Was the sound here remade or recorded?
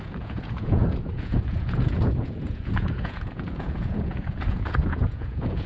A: remade